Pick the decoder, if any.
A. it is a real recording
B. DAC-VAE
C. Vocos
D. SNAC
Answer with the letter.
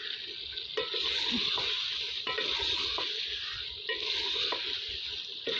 A